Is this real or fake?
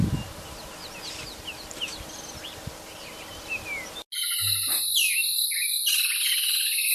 real